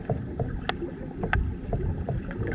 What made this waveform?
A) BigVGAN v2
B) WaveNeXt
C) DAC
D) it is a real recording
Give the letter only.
D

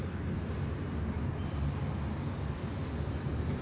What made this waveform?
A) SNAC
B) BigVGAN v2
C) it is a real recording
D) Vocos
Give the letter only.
C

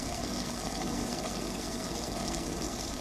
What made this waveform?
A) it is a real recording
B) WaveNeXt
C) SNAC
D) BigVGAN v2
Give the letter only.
C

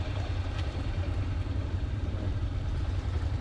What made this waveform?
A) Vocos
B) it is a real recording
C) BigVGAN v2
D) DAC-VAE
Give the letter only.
C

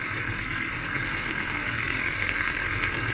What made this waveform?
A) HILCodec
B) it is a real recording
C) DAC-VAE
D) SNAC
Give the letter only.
D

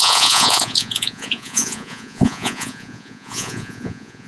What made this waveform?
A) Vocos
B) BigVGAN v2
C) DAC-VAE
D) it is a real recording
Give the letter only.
A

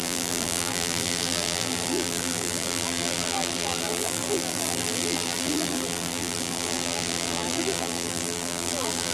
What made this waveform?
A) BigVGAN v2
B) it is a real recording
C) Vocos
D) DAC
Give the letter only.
A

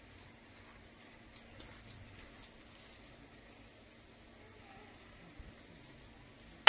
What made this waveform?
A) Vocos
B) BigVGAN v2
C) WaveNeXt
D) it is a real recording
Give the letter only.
D